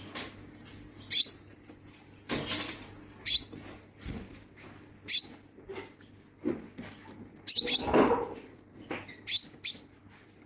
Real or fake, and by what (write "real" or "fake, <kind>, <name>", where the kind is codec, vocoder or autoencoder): real